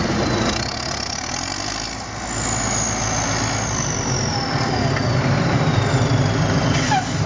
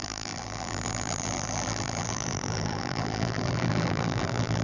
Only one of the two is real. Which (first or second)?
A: first